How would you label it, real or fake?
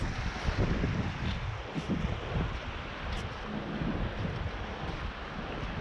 real